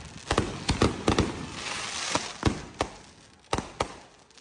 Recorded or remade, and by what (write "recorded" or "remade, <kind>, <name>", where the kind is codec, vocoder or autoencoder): recorded